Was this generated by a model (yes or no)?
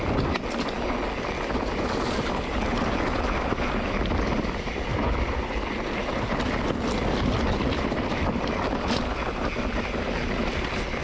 no